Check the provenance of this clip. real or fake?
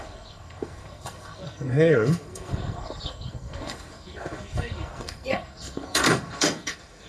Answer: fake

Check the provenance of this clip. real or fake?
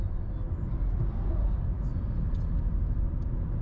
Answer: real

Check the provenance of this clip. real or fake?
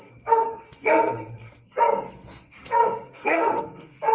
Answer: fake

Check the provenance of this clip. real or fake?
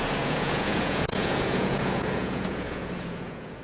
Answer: fake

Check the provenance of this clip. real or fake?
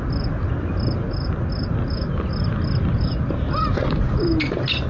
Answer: real